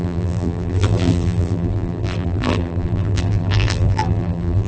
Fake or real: fake